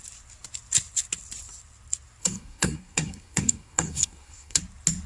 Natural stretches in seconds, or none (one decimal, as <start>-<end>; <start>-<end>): 0.0-2.2; 4.6-5.1